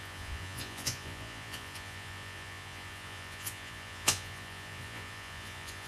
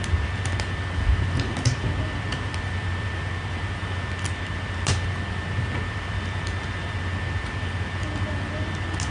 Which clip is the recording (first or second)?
second